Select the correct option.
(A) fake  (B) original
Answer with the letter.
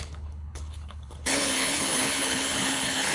A